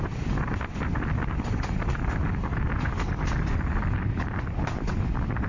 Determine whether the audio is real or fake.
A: real